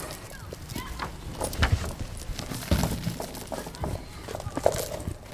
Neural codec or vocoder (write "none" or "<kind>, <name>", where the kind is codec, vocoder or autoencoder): none